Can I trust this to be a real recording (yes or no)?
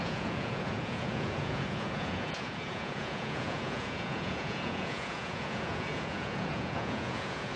no